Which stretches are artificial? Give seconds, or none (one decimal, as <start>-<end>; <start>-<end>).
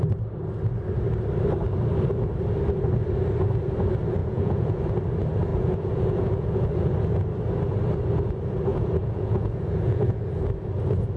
4.2-4.8; 5.5-6.7; 8.7-10.3